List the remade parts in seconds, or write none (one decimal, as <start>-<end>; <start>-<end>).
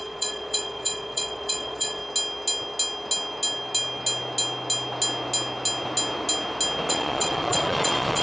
0.0-2.0; 6.9-8.2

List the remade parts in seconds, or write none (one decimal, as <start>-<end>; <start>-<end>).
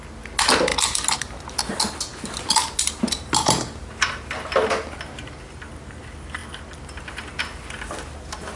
none